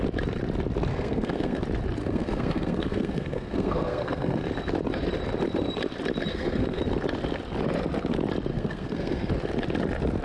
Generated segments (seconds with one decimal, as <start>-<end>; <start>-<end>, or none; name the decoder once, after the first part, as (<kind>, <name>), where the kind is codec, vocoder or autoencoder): 0.9-1.6 (codec, SNAC); 2.0-4.5; 6.3-6.8; 8.5-9.3